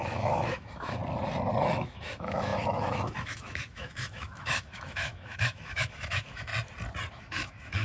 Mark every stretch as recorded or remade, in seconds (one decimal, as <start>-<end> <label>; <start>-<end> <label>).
0.0-1.0 remade; 1.0-1.6 recorded; 1.6-6.5 remade; 6.5-7.1 recorded; 7.1-7.8 remade